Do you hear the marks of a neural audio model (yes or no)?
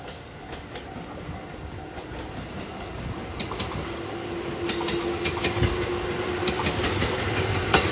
no